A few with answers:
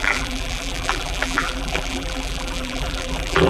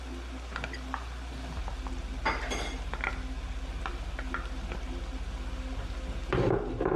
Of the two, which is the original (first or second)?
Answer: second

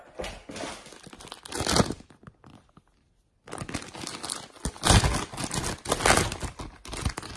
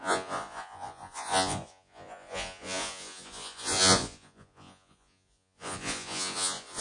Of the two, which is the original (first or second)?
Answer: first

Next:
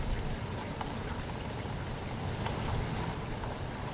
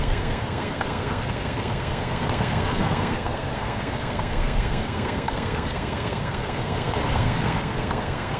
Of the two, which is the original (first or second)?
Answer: first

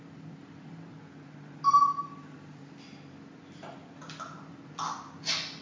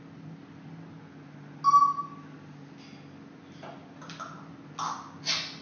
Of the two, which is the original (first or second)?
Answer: second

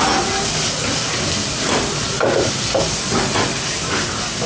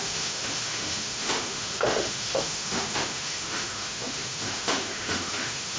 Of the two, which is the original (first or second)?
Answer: first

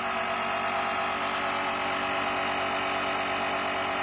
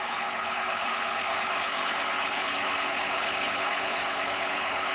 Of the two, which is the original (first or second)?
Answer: first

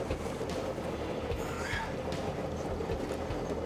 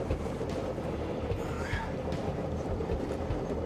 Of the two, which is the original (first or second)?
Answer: first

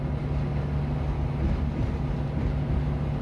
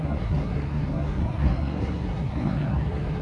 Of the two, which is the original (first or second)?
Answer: first